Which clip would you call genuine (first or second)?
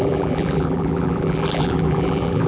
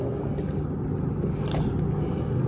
second